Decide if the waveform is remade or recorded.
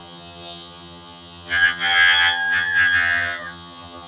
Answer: remade